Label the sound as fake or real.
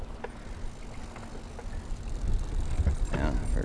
real